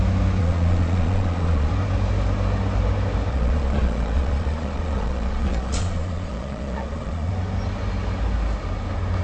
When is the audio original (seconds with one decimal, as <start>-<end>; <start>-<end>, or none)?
0.0-0.4; 1.7-3.3; 7.3-9.2